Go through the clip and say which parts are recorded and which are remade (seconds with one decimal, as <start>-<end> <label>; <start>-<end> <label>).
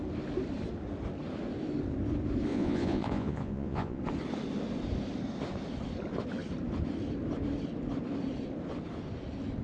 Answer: 0.0-2.5 recorded; 2.5-4.0 remade; 4.0-9.6 recorded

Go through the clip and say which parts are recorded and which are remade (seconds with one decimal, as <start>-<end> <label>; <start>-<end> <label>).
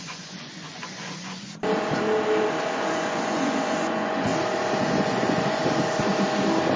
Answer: 0.0-1.5 remade; 1.5-2.6 recorded; 2.6-4.3 remade; 4.3-4.8 recorded; 4.8-5.6 remade; 5.6-6.8 recorded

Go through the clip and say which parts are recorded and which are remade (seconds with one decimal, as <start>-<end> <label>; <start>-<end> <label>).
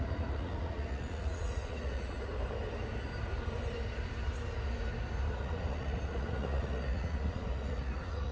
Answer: 0.0-2.3 remade; 2.3-5.4 recorded; 5.4-8.3 remade